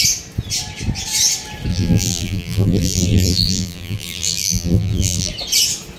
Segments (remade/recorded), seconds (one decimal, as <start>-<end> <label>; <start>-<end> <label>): 0.0-1.7 recorded; 1.7-5.3 remade; 5.3-6.0 recorded

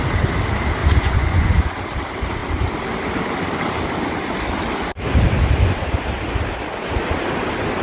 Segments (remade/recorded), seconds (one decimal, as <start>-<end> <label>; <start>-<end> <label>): 0.0-0.8 recorded; 0.8-1.5 remade; 1.5-7.8 recorded

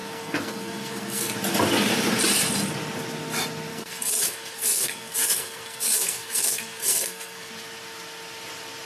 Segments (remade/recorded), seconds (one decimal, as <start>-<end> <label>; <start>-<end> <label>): 0.0-1.3 remade; 1.3-3.7 recorded; 3.7-7.5 remade; 7.5-8.9 recorded

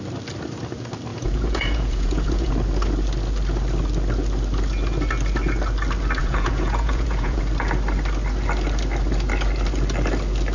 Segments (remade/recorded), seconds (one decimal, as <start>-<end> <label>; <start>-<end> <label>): 0.0-1.1 recorded; 1.1-2.5 remade; 2.5-6.2 recorded; 6.2-7.4 remade; 7.4-10.5 recorded

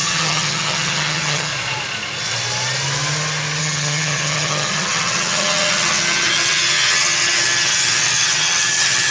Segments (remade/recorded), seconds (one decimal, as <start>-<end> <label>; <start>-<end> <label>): 0.0-1.5 remade; 1.5-3.6 recorded; 3.6-9.1 remade